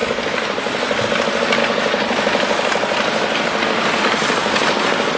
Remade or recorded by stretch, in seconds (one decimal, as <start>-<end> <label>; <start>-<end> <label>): 0.0-5.2 recorded